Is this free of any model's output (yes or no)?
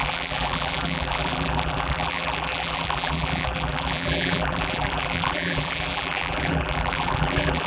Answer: no